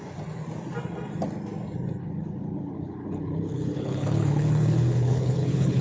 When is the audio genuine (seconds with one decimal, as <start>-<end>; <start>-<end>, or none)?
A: 0.0-2.0